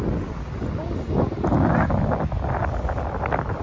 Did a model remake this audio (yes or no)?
no